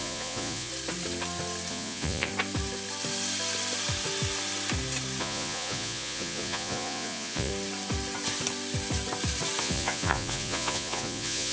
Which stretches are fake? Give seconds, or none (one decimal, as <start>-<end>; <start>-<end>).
0.0-0.7; 1.7-2.3; 5.2-7.5; 9.6-11.5